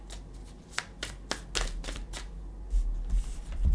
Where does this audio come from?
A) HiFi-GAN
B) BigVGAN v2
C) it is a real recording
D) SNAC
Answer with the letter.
C